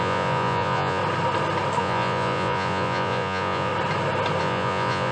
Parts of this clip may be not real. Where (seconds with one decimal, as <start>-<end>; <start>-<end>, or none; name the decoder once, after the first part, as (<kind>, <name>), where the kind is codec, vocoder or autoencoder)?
0.0-1.0 (vocoder, Vocos); 1.8-3.7; 4.4-5.1